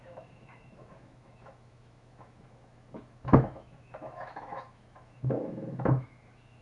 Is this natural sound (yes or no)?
no